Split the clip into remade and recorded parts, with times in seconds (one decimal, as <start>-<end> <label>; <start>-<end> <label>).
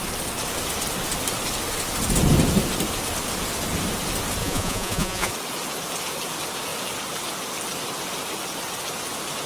0.0-4.4 recorded; 4.4-5.3 remade; 5.3-9.5 recorded